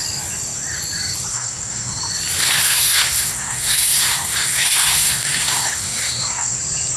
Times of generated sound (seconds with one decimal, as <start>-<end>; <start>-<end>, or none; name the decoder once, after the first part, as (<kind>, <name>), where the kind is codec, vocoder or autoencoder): 1.3-2.0 (codec, SNAC); 2.4-6.6